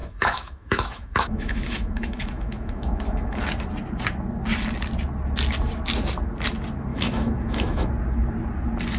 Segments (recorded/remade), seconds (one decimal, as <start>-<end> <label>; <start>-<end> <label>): 0.0-3.4 remade; 3.4-6.9 recorded; 6.9-7.9 remade; 7.9-9.0 recorded